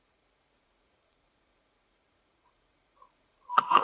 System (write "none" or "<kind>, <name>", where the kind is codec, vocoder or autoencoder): vocoder, Vocos